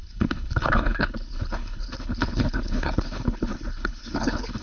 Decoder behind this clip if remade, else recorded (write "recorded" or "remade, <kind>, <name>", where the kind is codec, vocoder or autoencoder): remade, codec, HILCodec